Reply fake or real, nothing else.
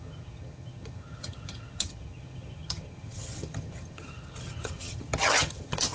fake